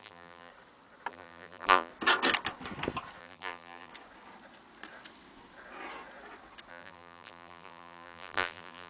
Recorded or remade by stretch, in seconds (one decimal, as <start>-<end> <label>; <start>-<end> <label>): 0.0-0.5 remade; 0.5-1.1 recorded; 1.1-1.9 remade; 1.9-3.2 recorded; 3.2-3.9 remade; 3.9-6.7 recorded; 6.7-8.9 remade